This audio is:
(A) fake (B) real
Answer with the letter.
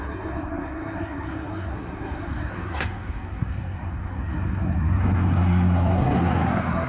A